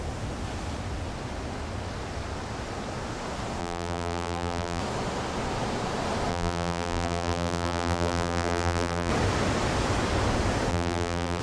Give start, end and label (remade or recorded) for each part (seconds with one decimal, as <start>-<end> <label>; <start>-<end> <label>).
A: 0.0-3.6 recorded; 3.6-4.8 remade; 4.8-6.3 recorded; 6.3-9.1 remade; 9.1-10.7 recorded; 10.7-11.4 remade